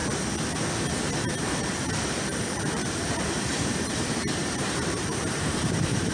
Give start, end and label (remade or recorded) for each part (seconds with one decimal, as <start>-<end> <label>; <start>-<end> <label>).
0.0-1.2 recorded; 1.2-6.1 remade